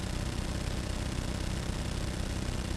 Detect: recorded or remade recorded